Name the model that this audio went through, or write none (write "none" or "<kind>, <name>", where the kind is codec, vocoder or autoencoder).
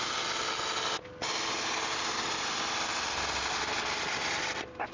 none